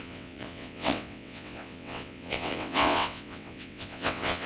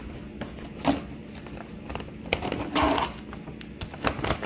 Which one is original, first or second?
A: second